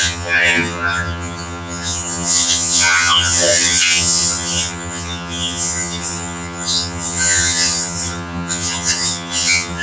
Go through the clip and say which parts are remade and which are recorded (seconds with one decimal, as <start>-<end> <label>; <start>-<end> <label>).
0.0-9.8 remade